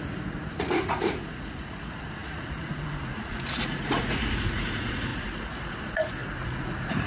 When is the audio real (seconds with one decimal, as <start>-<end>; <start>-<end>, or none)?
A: none